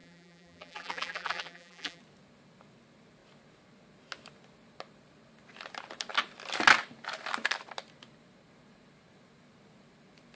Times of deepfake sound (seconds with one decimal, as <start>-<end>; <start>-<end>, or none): 0.0-2.0